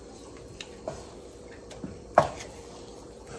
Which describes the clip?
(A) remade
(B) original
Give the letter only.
A